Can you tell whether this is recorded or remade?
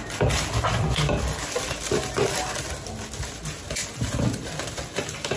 recorded